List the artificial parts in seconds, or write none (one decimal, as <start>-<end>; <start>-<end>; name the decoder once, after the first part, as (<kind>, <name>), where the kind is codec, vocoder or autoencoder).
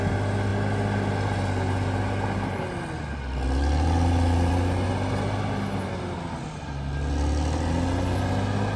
none